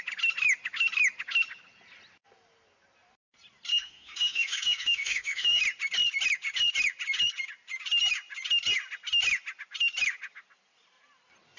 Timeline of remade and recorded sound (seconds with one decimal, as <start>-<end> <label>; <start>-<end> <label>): 0.0-3.7 recorded; 3.7-5.6 remade; 5.6-11.6 recorded